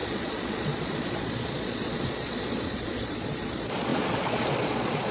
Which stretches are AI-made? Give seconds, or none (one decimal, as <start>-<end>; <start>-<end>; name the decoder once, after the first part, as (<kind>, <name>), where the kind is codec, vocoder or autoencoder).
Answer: 0.0-5.1 (vocoder, Vocos)